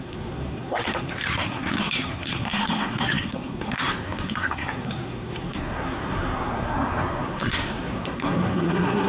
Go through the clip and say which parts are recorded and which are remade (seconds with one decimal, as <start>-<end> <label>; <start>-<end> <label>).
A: 0.0-9.1 remade